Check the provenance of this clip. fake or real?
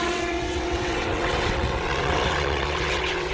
fake